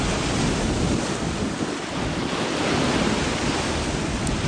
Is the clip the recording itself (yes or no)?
yes